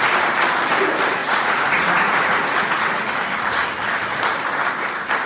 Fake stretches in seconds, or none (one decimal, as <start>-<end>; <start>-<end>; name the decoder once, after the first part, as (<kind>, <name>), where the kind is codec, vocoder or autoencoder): 1.2-3.1 (vocoder, Vocos)